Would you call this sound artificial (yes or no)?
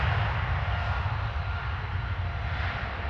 no